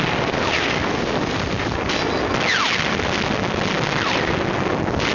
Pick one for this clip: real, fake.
real